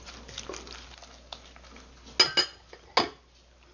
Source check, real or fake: real